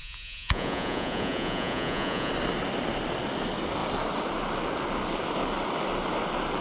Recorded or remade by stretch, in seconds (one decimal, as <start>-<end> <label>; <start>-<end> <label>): 0.0-2.3 remade; 2.3-6.6 recorded